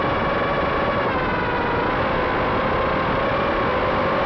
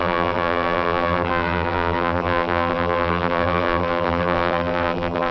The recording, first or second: first